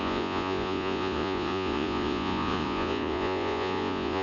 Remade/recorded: remade